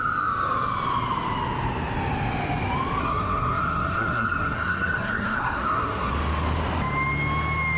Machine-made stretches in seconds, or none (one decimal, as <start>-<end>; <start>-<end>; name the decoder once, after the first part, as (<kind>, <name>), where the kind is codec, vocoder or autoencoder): 3.0-6.1 (codec, SNAC)